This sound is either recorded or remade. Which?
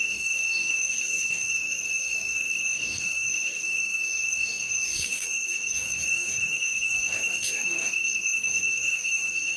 remade